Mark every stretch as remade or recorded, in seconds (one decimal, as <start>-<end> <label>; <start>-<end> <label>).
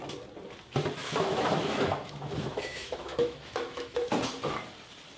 0.0-1.0 recorded; 1.0-4.1 remade; 4.1-5.2 recorded